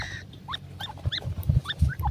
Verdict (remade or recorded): remade